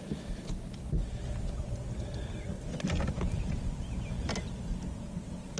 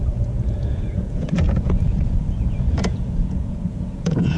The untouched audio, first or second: first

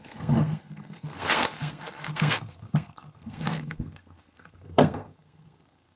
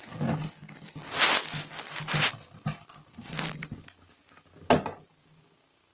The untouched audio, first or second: second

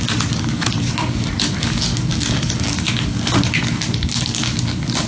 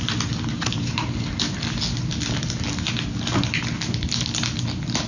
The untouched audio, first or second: second